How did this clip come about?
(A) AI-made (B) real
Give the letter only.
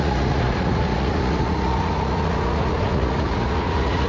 A